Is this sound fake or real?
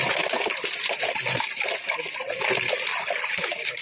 real